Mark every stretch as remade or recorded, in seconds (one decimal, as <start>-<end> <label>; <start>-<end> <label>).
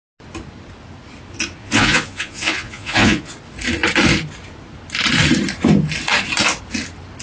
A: 0.0-1.6 recorded; 1.6-3.3 remade; 3.3-7.2 recorded